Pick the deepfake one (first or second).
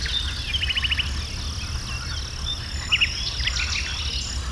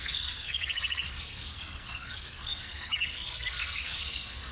second